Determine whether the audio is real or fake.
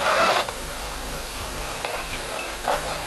fake